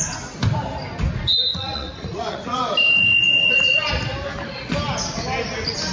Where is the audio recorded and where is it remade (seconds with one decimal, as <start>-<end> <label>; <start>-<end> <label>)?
0.0-1.5 recorded; 1.5-2.6 remade; 2.6-3.2 recorded; 3.2-3.9 remade; 3.9-5.9 recorded